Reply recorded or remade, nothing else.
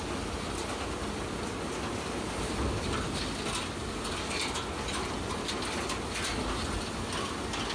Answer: recorded